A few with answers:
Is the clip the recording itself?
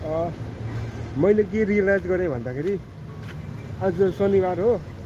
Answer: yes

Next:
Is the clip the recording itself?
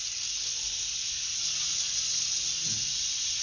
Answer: yes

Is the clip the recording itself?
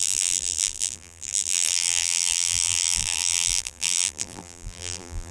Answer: no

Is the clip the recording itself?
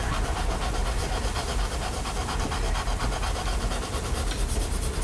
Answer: no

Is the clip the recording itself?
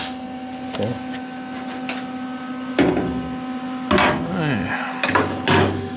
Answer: yes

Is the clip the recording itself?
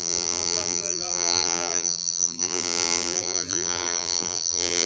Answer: no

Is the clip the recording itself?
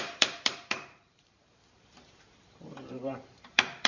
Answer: no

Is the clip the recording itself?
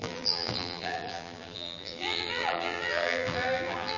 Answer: no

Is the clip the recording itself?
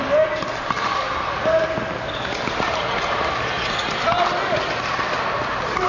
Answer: yes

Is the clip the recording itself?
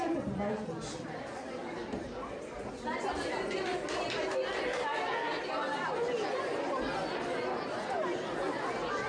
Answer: yes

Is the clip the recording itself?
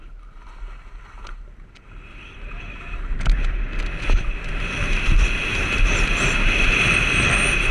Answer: yes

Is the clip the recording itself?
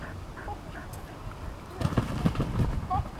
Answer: yes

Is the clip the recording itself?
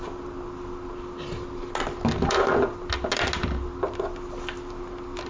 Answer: yes